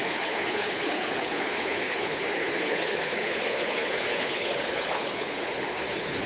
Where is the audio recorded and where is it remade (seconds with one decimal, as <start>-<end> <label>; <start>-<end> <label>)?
0.0-6.3 remade